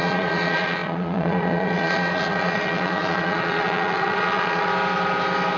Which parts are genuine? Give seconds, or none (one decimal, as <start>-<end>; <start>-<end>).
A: 4.7-5.6

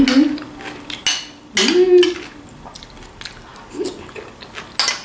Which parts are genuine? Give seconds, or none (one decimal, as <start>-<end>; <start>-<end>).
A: 0.0-5.0

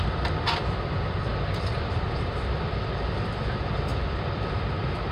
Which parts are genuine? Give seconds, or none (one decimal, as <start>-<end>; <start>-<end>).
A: 0.0-1.3; 3.4-3.9; 4.6-5.1

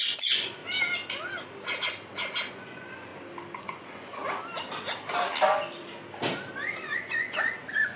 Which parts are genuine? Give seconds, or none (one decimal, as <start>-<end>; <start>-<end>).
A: 0.6-2.5; 3.1-3.6; 4.2-6.8

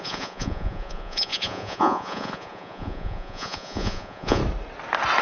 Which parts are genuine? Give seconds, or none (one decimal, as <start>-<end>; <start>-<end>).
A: 4.4-5.2

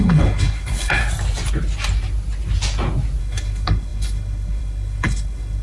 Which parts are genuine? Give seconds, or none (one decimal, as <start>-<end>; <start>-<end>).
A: 1.0-3.2

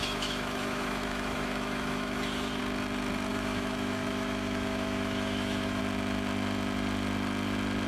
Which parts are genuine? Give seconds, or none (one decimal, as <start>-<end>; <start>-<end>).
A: 2.6-3.3; 5.8-7.9

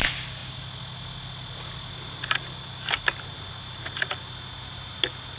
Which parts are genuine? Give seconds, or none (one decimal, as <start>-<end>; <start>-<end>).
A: 0.0-5.4